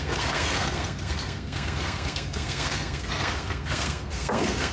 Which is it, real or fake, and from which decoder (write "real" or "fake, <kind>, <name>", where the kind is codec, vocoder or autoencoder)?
fake, codec, SNAC